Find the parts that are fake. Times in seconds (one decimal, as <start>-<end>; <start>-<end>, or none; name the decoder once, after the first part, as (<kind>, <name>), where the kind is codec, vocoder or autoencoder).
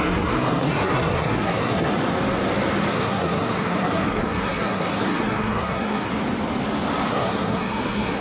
0.0-1.9 (codec, SNAC); 2.9-6.1; 7.1-8.2